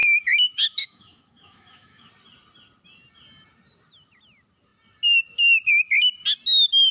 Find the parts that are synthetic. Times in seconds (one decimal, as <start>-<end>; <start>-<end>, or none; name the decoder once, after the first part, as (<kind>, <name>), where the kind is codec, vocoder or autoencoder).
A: 0.0-2.1 (autoencoder, DAC-VAE)